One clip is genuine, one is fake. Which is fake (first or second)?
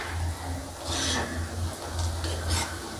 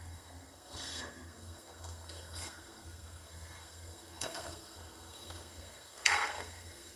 second